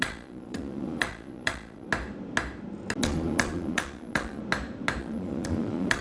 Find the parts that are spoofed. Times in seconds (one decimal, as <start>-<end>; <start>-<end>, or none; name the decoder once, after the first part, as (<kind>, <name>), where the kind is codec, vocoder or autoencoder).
0.0-1.9 (vocoder, Vocos); 3.0-4.4; 5.0-6.0